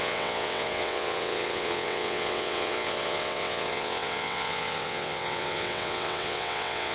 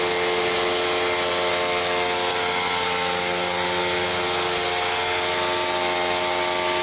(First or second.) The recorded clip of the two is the second